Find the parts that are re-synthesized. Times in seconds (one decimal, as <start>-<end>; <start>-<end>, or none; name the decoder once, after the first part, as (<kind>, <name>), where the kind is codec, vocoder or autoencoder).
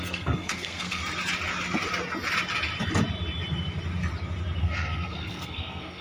0.0-1.0 (codec, SNAC); 4.6-6.0